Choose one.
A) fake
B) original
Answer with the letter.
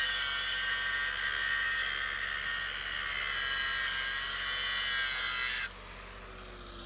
B